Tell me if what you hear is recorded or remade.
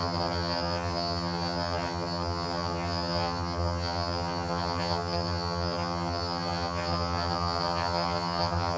remade